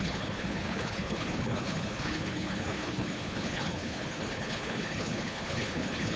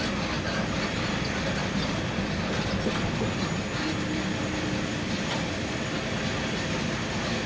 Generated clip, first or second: first